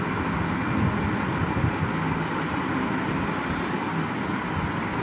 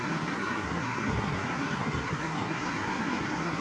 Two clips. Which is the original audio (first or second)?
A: first